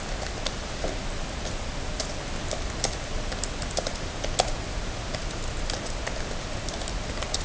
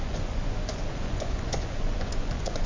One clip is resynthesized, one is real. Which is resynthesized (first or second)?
second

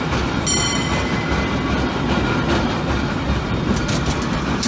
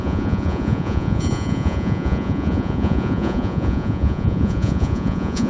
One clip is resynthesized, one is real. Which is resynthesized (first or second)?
second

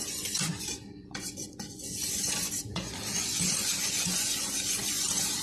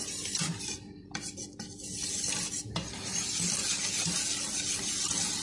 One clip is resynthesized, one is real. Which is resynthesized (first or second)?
first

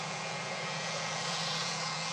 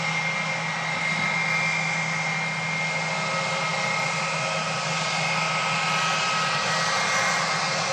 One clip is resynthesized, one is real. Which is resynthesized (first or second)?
first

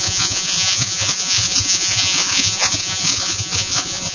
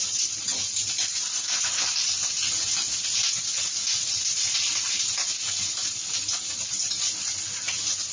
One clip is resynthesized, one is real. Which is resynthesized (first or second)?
first